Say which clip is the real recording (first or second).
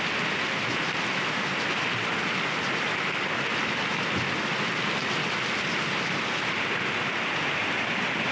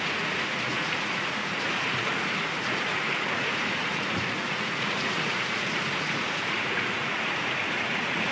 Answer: first